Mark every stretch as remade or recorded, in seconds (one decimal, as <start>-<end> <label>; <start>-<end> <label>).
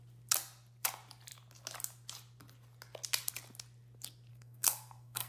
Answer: 0.0-4.3 recorded; 4.3-5.3 remade